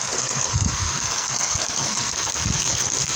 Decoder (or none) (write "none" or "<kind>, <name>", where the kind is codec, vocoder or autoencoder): codec, SNAC